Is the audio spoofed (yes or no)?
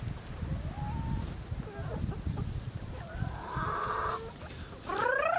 no